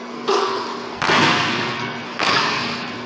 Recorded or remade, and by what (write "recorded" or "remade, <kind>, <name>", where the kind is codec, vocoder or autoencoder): remade, codec, SNAC